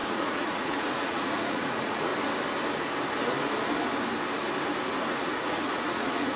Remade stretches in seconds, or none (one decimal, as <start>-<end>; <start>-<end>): 0.0-2.1; 5.1-6.4